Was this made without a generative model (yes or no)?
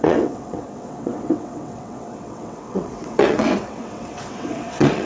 no